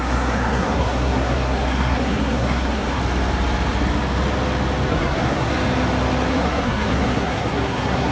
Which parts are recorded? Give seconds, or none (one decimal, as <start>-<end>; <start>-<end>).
3.0-4.9; 5.5-6.3